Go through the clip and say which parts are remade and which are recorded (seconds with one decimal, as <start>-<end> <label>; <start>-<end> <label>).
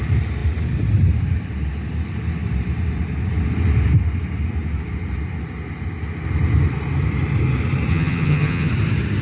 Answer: 0.0-7.9 recorded; 7.9-8.7 remade; 8.7-9.2 recorded